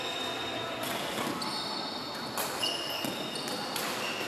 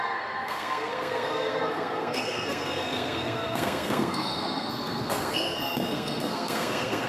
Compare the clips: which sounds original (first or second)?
first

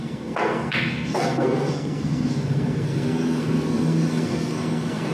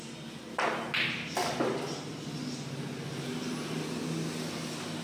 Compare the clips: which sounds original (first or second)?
second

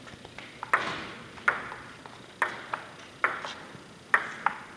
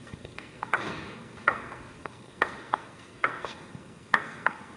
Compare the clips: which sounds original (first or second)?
first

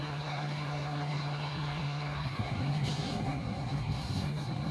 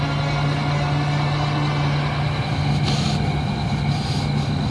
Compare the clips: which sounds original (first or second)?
second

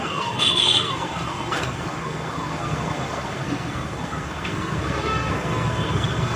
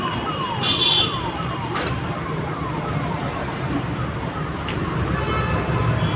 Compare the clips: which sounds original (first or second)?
second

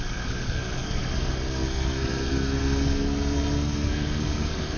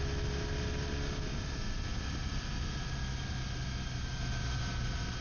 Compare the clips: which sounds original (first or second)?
second